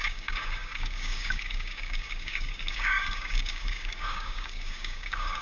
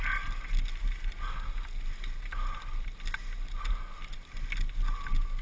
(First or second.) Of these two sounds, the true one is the second